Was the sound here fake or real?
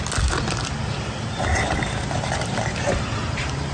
real